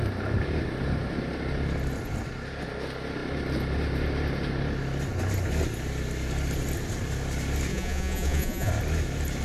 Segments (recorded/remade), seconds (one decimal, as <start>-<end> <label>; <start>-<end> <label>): 0.0-7.7 recorded; 7.7-8.7 remade; 8.7-9.4 recorded